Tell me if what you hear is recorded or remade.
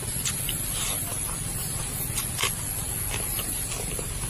recorded